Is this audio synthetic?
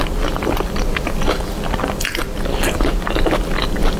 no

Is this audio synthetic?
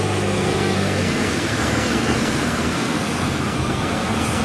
yes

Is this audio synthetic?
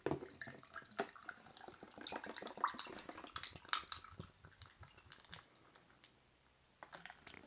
no